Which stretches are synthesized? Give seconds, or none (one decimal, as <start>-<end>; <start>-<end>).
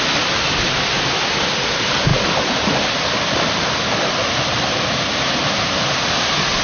none